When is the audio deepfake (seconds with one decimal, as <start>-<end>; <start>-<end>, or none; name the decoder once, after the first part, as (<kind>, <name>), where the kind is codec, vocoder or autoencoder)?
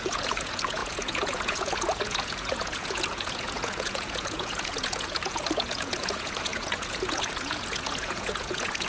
0.0-8.9 (vocoder, Vocos)